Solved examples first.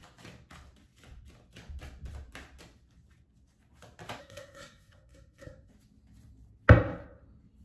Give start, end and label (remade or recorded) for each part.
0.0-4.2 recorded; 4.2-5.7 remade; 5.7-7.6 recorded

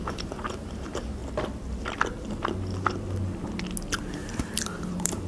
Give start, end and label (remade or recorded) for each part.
0.0-1.2 remade; 1.2-4.4 recorded; 4.4-5.3 remade

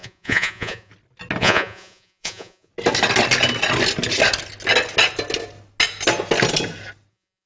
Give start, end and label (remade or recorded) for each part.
0.0-0.9 remade; 0.9-1.4 recorded; 1.4-2.7 remade; 2.7-7.1 recorded; 7.1-7.5 remade